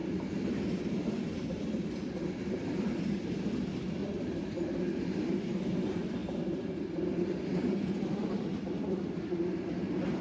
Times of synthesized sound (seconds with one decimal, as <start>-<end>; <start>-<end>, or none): 0.7-4.0; 5.1-10.2